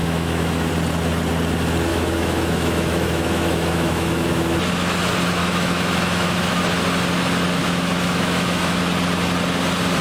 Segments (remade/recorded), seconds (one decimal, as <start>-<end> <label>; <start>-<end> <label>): 0.0-0.7 remade; 0.7-1.9 recorded; 1.9-4.6 remade; 4.6-5.4 recorded; 5.4-6.6 remade; 6.6-7.6 recorded; 7.6-8.8 remade; 8.8-10.0 recorded